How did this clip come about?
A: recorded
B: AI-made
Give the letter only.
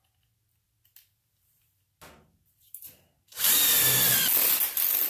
A